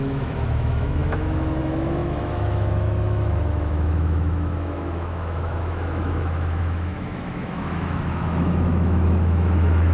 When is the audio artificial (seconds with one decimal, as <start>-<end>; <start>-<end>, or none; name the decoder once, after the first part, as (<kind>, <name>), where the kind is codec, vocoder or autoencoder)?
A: 0.0-9.9 (autoencoder, DAC-VAE)